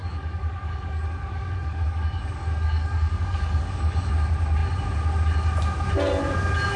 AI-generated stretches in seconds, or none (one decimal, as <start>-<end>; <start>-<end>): 0.0-4.1